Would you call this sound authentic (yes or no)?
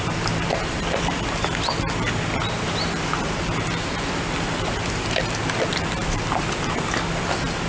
no